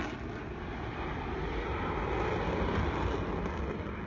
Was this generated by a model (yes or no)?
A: no